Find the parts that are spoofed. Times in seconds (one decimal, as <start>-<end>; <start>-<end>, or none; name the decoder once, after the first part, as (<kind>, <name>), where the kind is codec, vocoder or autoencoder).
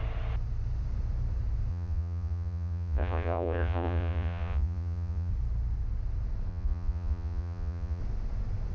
1.7-5.3 (vocoder, Vocos); 6.5-8.0